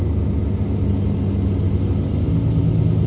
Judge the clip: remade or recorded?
recorded